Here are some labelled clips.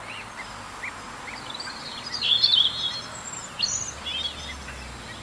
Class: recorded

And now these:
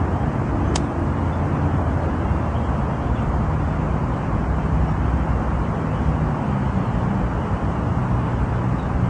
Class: recorded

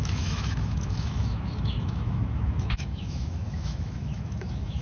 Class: remade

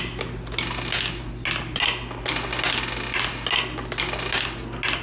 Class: recorded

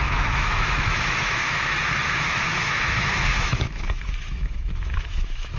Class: remade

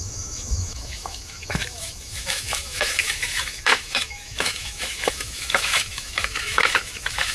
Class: remade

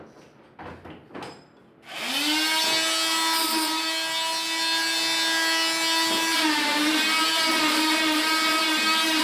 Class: recorded